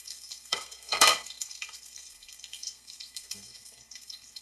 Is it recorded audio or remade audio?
remade